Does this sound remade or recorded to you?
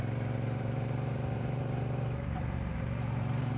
remade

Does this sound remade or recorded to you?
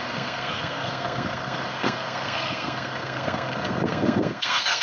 remade